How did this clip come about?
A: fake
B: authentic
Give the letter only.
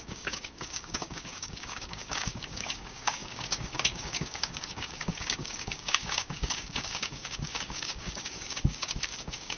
A